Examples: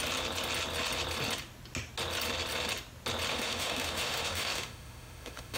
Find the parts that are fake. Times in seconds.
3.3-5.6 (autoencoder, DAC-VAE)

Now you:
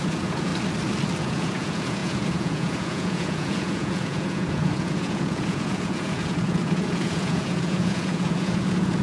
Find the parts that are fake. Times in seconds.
0.0-0.5 (vocoder, Vocos); 1.2-9.0

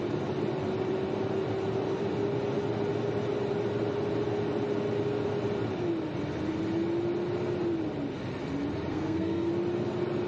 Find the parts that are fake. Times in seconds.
8.9-9.5 (codec, SNAC)

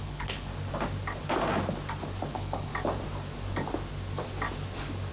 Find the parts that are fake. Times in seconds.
0.0-0.5 (codec, HILCodec); 2.3-2.7